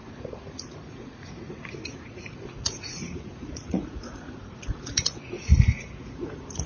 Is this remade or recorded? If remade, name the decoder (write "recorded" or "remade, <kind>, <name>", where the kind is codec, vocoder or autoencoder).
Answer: remade, vocoder, Vocos